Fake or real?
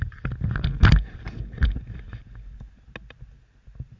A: real